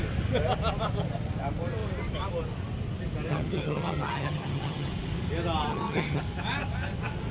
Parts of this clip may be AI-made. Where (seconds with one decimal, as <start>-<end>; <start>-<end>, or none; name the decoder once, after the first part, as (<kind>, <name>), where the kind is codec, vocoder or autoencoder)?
3.3-4.9 (vocoder, HiFi-GAN); 5.7-6.2